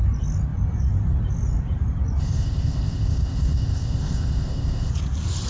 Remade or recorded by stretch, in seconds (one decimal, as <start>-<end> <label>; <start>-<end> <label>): 0.0-2.2 recorded; 2.2-4.9 remade; 4.9-5.5 recorded